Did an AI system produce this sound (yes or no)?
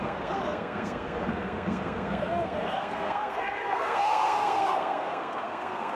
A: yes